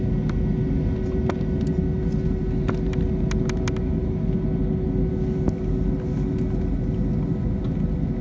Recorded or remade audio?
recorded